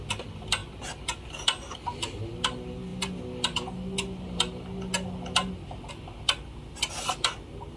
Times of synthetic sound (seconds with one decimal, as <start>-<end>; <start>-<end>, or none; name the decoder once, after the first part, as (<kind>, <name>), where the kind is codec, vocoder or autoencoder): none